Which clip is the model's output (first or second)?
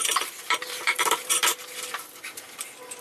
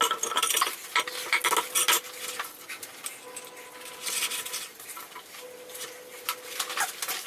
first